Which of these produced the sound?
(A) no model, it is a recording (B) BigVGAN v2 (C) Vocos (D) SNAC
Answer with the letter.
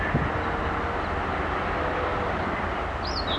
A